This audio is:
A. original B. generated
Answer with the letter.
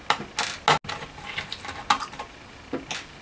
A